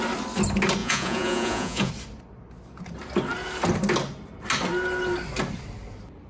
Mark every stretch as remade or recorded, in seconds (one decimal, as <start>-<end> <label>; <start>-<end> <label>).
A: 0.0-0.8 recorded; 0.8-1.9 remade; 1.9-6.3 recorded

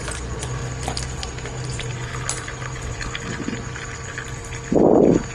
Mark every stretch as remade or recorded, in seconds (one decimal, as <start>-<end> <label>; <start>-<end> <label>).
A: 0.0-0.6 remade; 0.6-1.7 recorded; 1.7-2.1 remade; 2.1-5.3 recorded